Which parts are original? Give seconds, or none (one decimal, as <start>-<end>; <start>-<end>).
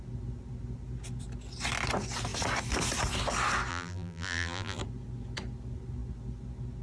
0.0-3.7; 4.8-6.8